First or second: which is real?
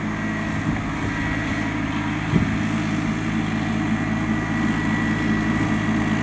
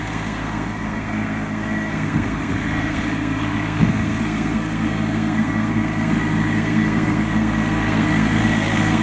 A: first